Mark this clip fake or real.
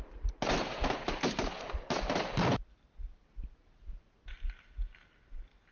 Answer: real